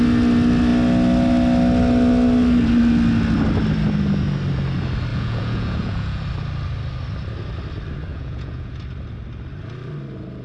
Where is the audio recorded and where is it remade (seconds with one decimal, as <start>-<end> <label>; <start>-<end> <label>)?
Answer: 0.0-5.1 recorded; 5.1-6.2 remade; 6.2-8.1 recorded; 8.1-8.8 remade; 8.8-10.4 recorded